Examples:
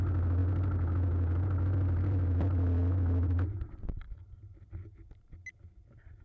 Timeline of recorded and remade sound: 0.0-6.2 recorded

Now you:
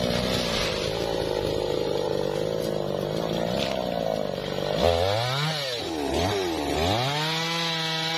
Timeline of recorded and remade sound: 0.0-0.6 recorded; 0.6-2.1 remade; 2.1-8.2 recorded

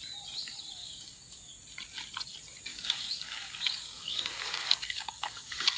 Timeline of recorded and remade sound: 0.0-0.8 recorded; 0.8-1.5 remade; 1.5-2.7 recorded; 2.7-5.8 remade

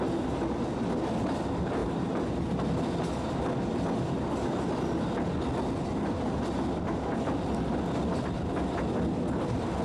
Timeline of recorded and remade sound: 0.0-1.8 recorded; 1.8-2.5 remade; 2.5-9.8 recorded

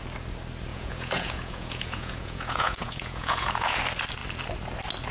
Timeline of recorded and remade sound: 0.0-0.7 recorded; 0.7-3.8 remade; 3.8-5.1 recorded